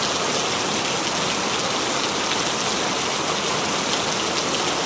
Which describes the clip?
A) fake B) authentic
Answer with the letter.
B